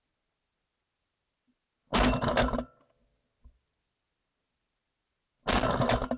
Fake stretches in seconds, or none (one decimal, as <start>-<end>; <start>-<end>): none